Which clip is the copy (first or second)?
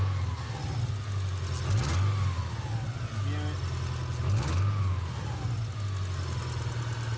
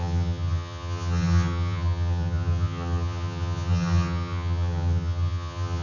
second